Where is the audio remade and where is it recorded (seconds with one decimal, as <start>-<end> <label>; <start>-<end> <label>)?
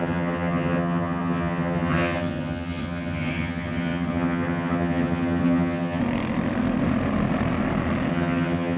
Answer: 0.0-6.0 remade; 6.0-8.1 recorded; 8.1-8.8 remade